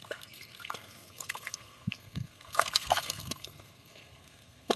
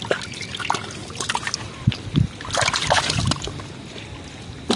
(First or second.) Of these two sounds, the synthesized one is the first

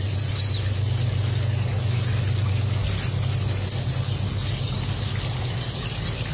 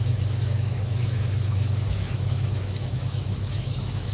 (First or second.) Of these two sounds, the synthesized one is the second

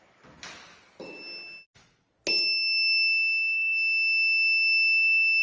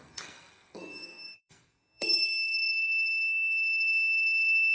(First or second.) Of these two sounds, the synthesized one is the second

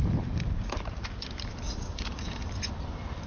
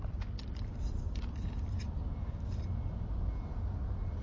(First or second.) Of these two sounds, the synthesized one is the first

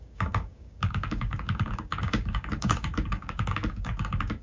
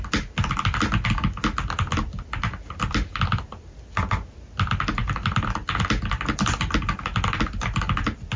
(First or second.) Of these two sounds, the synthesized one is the first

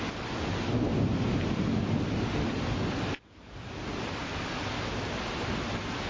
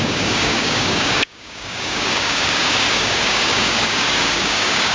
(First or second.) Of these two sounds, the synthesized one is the second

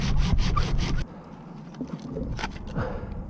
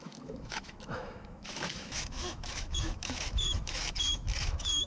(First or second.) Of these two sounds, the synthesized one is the second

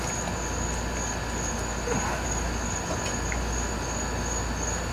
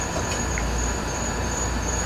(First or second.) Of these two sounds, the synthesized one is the second